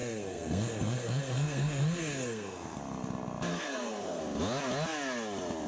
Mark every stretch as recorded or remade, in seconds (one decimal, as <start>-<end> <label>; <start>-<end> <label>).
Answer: 0.0-2.8 remade; 2.8-3.5 recorded; 3.5-4.2 remade; 4.2-5.7 recorded